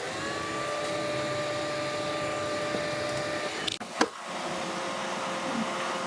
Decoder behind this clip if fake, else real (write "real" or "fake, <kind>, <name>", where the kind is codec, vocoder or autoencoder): real